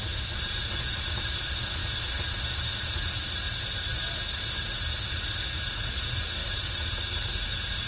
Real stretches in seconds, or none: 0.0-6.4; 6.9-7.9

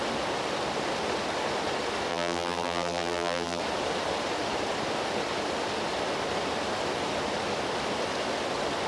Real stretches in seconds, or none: 0.0-2.1; 3.6-8.9

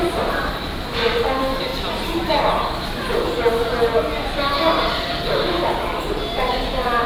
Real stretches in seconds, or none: 1.7-6.0